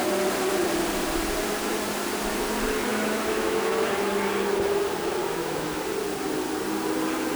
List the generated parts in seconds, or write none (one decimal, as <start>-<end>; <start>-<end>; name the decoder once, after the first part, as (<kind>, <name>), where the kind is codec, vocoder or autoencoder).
2.9-3.9 (autoencoder, DAC-VAE); 5.2-5.8